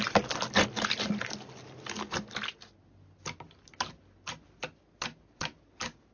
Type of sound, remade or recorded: recorded